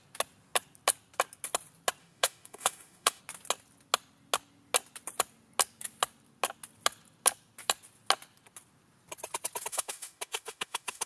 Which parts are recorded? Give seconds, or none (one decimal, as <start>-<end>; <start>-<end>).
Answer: 0.0-2.0; 3.2-9.7